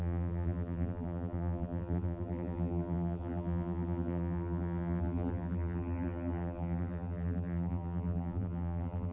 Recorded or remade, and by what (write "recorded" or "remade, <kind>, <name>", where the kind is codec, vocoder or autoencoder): remade, vocoder, BigVGAN v2